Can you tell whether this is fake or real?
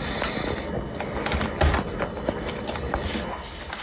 real